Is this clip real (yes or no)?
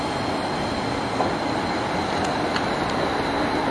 yes